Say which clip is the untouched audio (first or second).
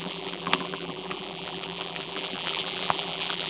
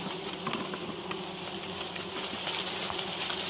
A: second